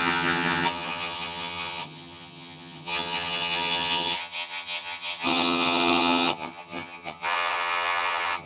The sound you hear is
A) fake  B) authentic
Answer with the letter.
A